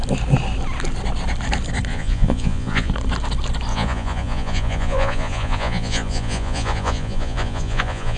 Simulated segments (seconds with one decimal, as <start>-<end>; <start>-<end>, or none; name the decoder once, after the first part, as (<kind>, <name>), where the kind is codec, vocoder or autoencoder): 1.9-2.9 (vocoder, Vocos); 3.7-8.2